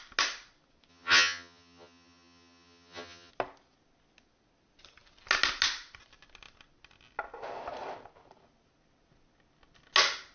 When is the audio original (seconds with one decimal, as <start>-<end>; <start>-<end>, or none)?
0.0-0.9; 3.3-10.3